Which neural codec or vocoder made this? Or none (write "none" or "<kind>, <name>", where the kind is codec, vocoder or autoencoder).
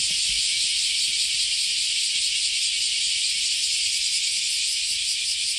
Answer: none